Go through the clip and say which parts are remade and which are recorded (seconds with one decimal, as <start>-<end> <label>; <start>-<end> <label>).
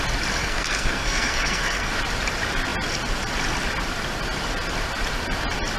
0.0-0.4 recorded; 0.4-1.9 remade; 1.9-5.8 recorded